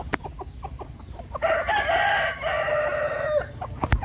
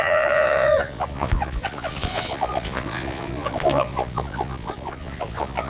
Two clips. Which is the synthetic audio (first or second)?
second